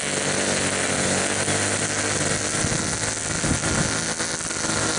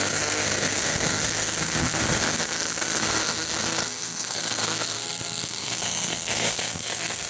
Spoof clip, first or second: second